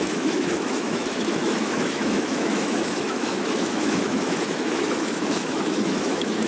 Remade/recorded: remade